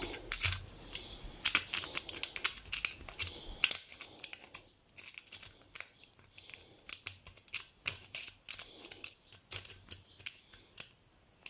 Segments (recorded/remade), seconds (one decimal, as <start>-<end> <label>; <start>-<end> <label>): 0.0-3.9 recorded; 3.9-6.0 remade; 6.0-11.5 recorded

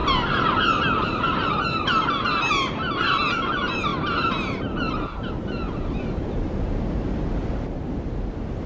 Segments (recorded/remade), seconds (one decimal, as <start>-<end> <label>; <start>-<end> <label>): 0.0-3.3 recorded; 3.3-3.9 remade; 3.9-5.7 recorded; 5.7-8.7 remade

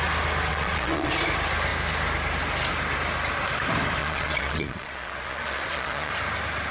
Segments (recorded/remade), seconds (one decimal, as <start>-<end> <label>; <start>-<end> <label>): 0.0-0.5 recorded; 0.5-1.1 remade; 1.1-4.0 recorded; 4.0-6.1 remade; 6.1-6.7 recorded